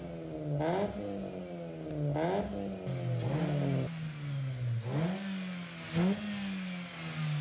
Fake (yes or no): no